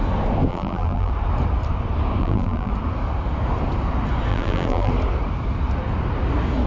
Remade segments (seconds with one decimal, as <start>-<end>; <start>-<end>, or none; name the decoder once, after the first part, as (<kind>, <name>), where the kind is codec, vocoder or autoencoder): 0.5-1.1 (vocoder, BigVGAN v2); 2.2-2.7; 4.3-4.9